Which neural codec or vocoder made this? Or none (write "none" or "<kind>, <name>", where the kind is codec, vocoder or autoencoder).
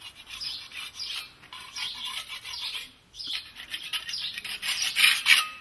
none